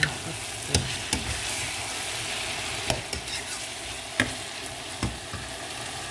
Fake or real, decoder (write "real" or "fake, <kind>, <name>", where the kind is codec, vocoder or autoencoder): real